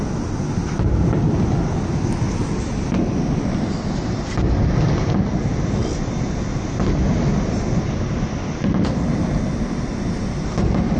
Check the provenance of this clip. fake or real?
real